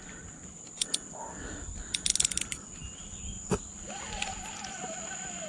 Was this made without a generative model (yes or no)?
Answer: yes